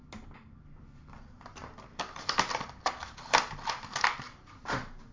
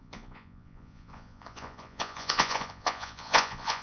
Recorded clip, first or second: first